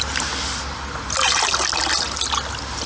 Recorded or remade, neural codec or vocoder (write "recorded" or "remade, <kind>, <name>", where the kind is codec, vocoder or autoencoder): recorded